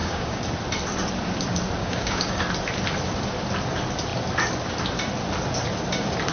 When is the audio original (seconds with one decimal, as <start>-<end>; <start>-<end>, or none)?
0.5-1.8; 2.4-6.3